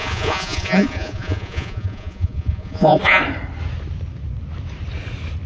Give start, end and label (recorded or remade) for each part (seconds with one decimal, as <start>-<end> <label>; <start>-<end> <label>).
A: 0.0-3.2 remade; 3.2-5.5 recorded